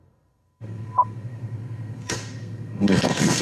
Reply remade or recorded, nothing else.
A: remade